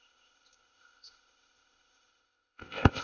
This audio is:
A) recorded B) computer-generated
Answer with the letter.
B